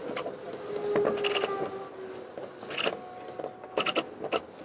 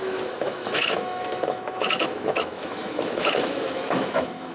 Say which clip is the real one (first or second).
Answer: first